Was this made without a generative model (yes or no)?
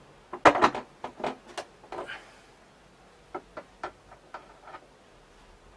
yes